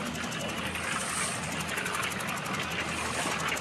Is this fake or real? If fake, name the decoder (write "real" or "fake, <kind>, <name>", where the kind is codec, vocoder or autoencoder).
real